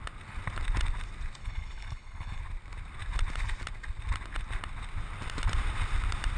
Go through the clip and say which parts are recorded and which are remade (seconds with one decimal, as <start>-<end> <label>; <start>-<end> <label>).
0.0-1.4 recorded; 1.4-2.4 remade; 2.4-6.4 recorded